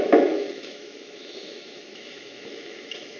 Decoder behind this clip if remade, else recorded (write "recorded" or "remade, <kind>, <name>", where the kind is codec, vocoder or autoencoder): remade, autoencoder, DAC-VAE